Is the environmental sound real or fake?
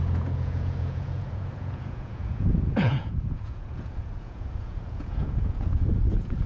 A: fake